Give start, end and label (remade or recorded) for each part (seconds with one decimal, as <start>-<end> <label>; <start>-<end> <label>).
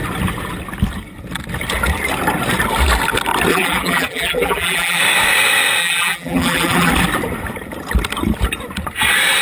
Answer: 0.0-3.5 recorded; 3.5-5.0 remade; 5.0-5.8 recorded; 5.8-6.9 remade; 6.9-9.4 recorded